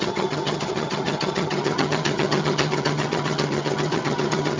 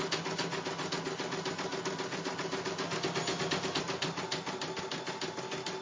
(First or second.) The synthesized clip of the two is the first